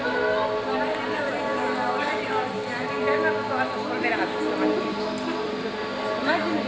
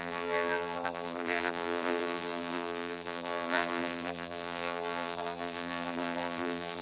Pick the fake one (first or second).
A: second